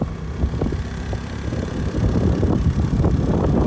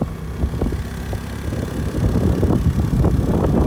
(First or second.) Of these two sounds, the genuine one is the second